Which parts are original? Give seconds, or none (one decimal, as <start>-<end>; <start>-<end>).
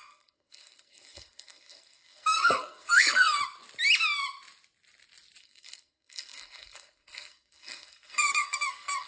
3.4-5.4